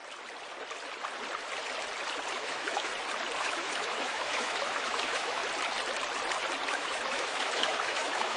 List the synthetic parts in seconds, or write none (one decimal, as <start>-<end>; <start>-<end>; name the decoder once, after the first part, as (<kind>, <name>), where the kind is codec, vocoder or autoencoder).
2.3-2.9 (autoencoder, DAC-VAE); 3.4-5.4; 6.7-8.4